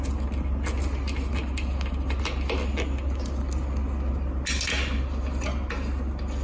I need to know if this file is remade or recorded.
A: recorded